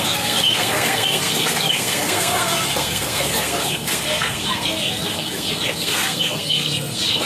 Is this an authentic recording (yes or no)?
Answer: no